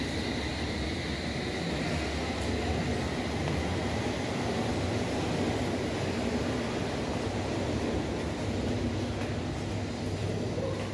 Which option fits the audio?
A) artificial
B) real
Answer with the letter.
B